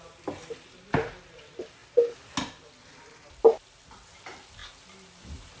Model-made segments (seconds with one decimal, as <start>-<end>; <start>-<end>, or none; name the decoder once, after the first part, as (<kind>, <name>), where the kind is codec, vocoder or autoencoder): none